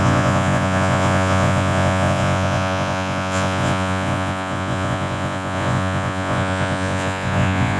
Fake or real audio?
fake